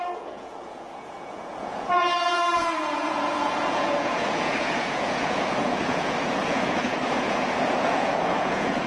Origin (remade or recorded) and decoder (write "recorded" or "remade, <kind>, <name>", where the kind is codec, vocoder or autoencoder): remade, vocoder, Vocos